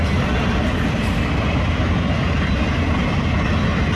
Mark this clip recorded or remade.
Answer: recorded